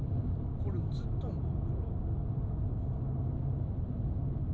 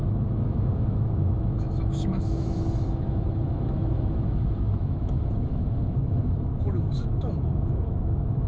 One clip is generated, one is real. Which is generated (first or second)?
second